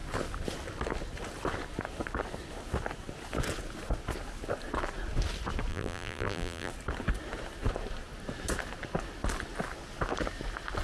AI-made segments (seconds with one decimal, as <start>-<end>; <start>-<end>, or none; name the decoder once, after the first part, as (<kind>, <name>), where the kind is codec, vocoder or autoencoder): 5.7-6.7 (vocoder, BigVGAN v2)